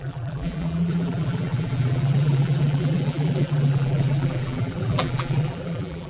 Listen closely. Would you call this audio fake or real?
fake